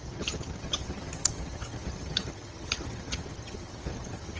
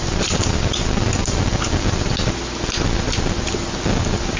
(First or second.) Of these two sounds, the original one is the second